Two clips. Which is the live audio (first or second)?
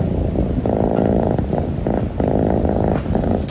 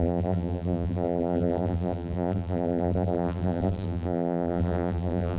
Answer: first